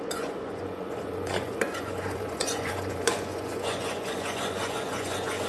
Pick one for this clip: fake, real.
fake